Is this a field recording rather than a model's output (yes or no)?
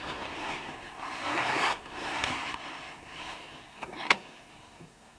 no